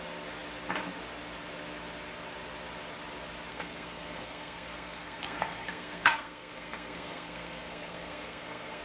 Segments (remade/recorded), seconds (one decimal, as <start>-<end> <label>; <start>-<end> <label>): 0.0-3.5 recorded; 3.5-8.8 remade